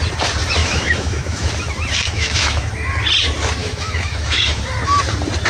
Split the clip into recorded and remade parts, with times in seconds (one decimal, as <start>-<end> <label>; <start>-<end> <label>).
0.0-0.6 recorded; 0.6-1.5 remade; 1.5-2.0 recorded; 2.0-2.7 remade; 2.7-3.6 recorded; 3.6-4.6 remade; 4.6-5.5 recorded